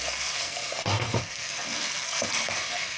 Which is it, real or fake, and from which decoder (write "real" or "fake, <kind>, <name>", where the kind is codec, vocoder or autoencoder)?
fake, codec, SNAC